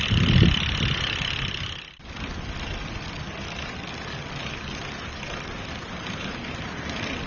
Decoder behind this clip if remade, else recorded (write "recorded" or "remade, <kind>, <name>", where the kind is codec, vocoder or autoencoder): recorded